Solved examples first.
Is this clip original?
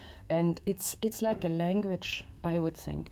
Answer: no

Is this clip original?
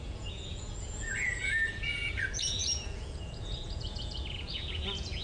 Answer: no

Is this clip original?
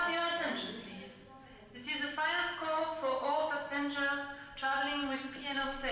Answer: yes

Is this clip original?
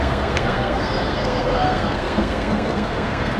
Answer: no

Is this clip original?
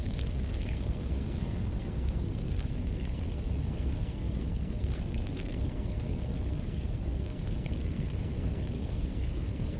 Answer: no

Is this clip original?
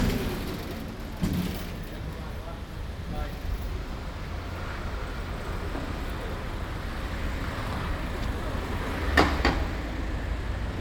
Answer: yes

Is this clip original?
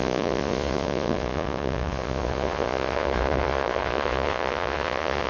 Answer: no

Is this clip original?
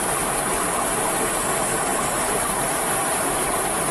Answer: yes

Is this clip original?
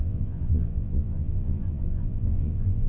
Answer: no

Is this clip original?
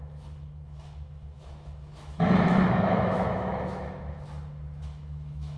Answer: no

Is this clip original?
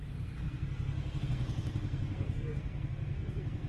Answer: no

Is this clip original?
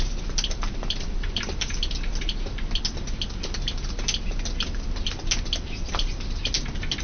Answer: yes